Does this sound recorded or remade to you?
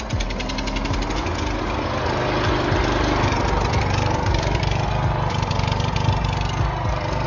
recorded